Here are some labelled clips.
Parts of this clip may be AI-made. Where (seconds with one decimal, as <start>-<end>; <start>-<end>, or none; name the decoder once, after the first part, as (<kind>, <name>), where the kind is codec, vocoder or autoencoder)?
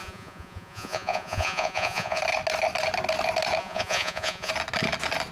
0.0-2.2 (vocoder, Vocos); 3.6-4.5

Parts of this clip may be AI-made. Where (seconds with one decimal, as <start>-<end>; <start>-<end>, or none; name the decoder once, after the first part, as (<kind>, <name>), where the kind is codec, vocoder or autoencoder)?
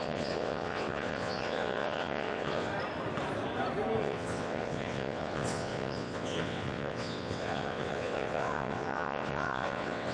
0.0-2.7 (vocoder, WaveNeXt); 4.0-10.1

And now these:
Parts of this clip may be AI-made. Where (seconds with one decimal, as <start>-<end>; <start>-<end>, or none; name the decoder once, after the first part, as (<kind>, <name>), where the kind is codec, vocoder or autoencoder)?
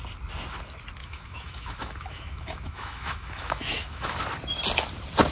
1.0-4.2 (autoencoder, DAC-VAE)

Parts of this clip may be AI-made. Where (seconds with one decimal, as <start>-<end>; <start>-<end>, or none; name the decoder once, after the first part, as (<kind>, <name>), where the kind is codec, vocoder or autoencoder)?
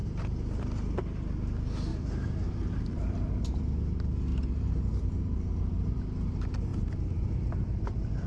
0.0-0.6 (vocoder, BigVGAN v2); 1.9-3.6; 4.3-5.6; 6.7-8.3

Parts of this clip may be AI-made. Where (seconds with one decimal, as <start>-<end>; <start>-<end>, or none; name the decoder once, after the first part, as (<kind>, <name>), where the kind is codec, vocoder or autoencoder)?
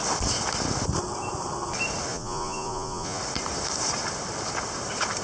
2.1-3.2 (vocoder, Vocos)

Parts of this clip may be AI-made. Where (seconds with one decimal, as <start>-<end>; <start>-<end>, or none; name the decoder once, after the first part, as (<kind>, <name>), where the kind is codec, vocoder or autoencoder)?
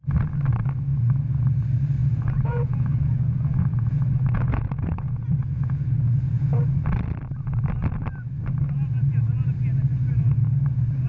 2.0-6.1 (vocoder, Vocos)